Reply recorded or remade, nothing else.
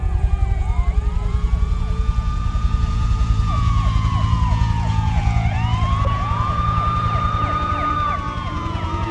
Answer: remade